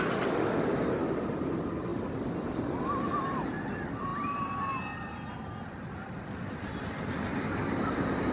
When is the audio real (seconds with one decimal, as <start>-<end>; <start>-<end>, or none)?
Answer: 0.0-8.3